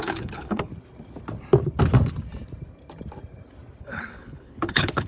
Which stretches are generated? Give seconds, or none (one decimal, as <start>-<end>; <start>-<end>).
0.0-0.7; 3.8-5.1